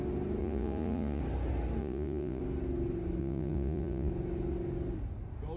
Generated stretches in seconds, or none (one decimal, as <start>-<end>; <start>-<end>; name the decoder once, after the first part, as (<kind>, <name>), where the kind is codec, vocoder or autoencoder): 0.4-1.2 (vocoder, Vocos); 1.8-2.4; 3.2-4.1